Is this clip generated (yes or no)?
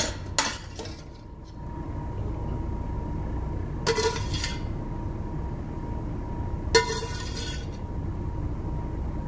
no